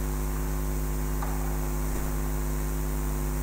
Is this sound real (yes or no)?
yes